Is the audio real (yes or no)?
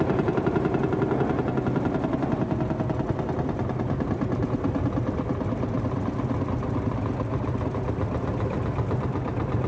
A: yes